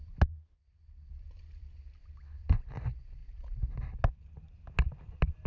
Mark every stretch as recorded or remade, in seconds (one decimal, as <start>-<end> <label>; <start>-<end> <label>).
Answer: 0.0-5.5 recorded